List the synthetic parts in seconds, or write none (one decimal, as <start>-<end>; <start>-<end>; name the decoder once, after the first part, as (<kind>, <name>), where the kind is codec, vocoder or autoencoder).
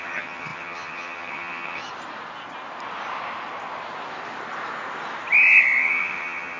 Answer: 0.0-1.8 (vocoder, HiFi-GAN); 5.8-6.6